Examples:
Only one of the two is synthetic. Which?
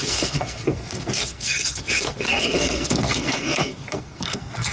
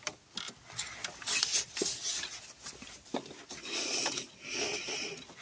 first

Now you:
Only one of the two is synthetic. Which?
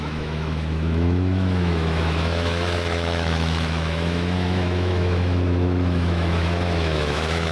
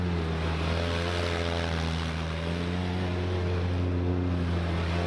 first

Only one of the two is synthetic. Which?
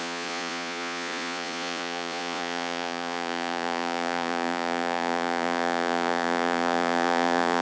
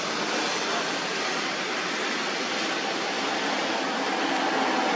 first